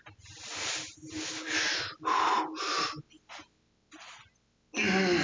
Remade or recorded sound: recorded